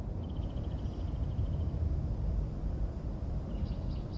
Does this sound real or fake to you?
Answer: real